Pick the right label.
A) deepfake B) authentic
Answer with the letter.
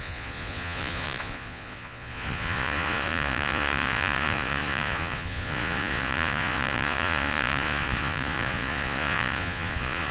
A